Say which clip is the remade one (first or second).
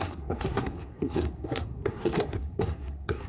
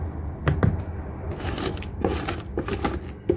first